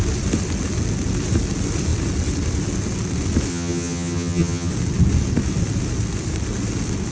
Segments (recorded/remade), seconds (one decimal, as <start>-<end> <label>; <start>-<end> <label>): 0.0-3.5 recorded; 3.5-4.7 remade; 4.7-7.1 recorded